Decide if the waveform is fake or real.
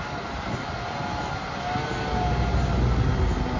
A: real